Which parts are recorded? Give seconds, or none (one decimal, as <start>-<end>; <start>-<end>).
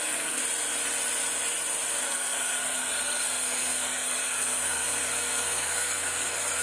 0.4-2.0